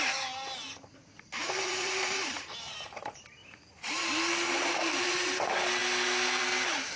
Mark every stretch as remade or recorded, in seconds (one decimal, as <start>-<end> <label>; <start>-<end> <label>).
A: 0.0-1.0 recorded; 1.0-4.0 remade; 4.0-7.0 recorded